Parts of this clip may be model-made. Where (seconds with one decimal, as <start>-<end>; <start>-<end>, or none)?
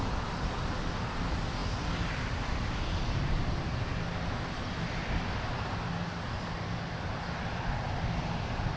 none